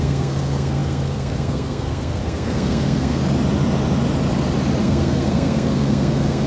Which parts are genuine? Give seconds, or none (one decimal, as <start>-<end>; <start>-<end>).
3.2-4.8